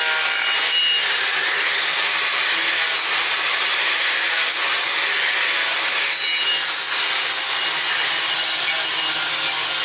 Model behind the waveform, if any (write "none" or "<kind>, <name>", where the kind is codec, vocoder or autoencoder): none